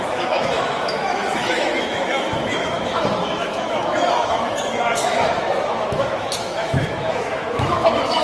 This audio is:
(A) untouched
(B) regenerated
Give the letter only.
B